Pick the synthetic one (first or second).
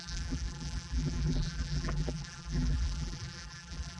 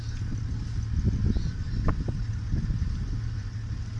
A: first